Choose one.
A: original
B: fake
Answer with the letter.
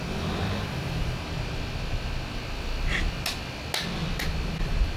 A